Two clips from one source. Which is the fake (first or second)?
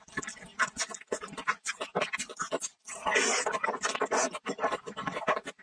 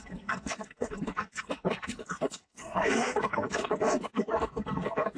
second